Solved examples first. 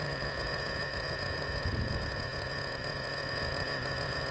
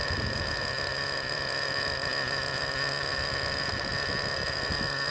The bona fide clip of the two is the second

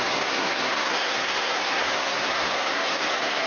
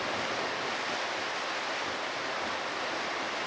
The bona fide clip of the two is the second